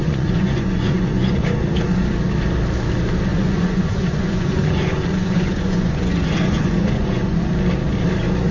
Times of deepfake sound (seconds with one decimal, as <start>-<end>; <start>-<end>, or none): 0.0-1.4; 3.3-7.4

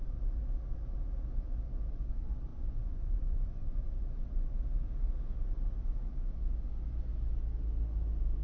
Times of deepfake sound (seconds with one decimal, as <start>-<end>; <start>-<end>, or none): 2.5-3.9

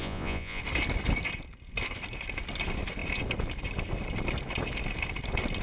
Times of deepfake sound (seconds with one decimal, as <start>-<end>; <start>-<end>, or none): 0.0-0.6

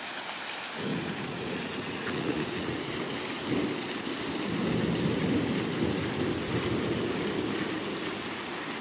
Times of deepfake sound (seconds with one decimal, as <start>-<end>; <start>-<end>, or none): 0.9-2.8

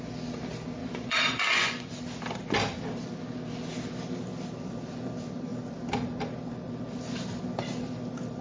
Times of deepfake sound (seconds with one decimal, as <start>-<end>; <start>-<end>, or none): 0.8-2.0

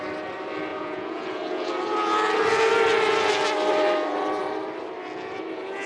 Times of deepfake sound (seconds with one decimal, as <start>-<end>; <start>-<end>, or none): 0.7-1.7